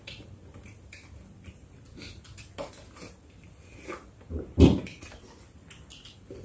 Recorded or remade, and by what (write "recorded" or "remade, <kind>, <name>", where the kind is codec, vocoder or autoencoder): recorded